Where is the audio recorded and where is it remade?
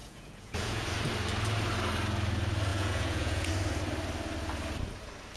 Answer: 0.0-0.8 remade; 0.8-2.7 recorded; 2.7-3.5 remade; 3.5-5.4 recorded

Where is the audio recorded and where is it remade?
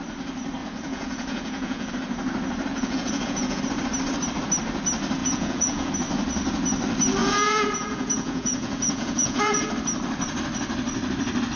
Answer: 0.0-0.6 recorded; 0.6-1.9 remade; 1.9-2.7 recorded; 2.7-3.6 remade; 3.6-5.2 recorded; 5.2-5.9 remade; 5.9-7.2 recorded; 7.2-9.7 remade; 9.7-11.6 recorded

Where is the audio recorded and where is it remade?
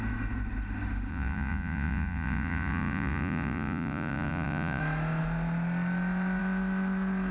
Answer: 0.0-1.1 recorded; 1.1-4.8 remade; 4.8-7.3 recorded